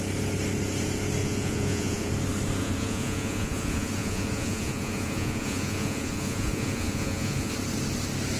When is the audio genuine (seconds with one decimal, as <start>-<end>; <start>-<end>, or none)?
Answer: 0.0-1.2; 2.1-2.6; 7.5-8.4